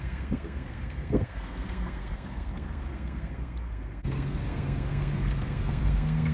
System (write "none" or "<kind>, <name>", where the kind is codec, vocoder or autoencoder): codec, SNAC